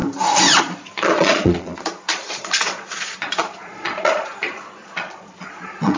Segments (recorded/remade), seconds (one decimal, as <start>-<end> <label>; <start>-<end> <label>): 0.0-0.6 recorded; 0.6-6.0 remade